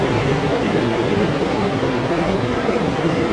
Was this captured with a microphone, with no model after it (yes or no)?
no